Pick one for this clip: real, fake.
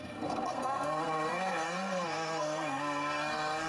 fake